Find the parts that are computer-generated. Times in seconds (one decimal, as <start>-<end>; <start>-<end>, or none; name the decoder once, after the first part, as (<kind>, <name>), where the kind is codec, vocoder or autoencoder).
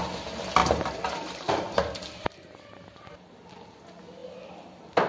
none